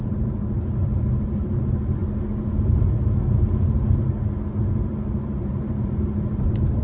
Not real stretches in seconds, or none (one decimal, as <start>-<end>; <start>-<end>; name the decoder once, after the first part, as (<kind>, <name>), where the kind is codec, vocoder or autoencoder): 0.0-2.0 (vocoder, BigVGAN v2); 4.7-6.8